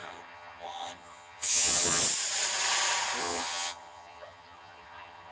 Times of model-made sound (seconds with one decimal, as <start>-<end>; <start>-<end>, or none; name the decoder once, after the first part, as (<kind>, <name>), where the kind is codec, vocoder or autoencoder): 0.0-2.0 (vocoder, HiFi-GAN); 3.2-5.3